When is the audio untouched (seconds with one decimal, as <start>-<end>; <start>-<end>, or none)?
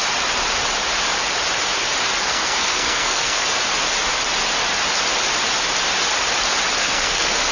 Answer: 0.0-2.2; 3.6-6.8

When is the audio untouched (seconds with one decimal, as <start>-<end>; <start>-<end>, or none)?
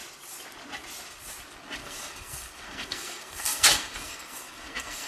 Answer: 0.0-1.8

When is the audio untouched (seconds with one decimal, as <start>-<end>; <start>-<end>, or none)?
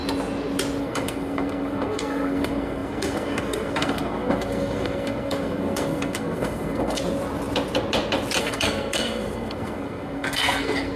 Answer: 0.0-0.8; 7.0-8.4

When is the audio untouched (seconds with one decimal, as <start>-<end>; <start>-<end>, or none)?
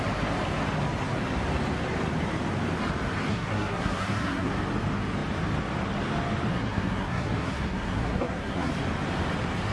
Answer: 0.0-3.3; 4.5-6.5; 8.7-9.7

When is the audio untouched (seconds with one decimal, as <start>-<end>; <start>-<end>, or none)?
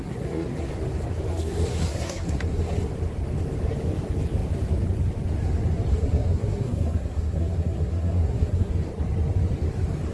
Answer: 0.7-1.3; 2.9-5.9; 8.7-10.1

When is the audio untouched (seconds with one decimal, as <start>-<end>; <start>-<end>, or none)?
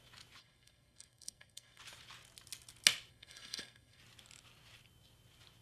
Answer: 0.0-0.4; 1.8-3.1; 4.0-5.6